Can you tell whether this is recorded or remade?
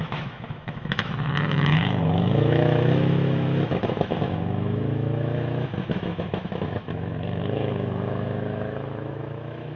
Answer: remade